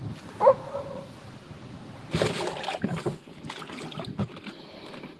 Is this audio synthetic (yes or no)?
no